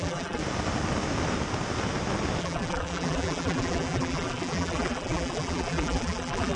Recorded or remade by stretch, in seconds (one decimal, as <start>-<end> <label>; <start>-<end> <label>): 0.0-0.4 remade; 0.4-2.4 recorded; 2.4-6.6 remade